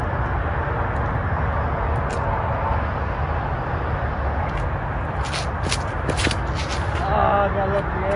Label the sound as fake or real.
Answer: real